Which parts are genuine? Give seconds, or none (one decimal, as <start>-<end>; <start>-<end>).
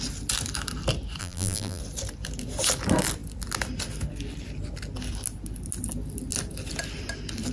0.0-1.2; 1.8-7.5